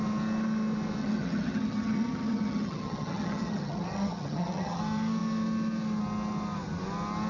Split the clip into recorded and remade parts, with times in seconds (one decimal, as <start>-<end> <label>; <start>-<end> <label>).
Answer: 0.0-1.0 recorded; 1.0-4.8 remade; 4.8-7.3 recorded